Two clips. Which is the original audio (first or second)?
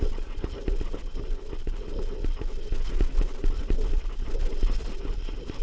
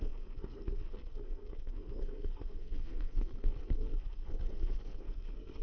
first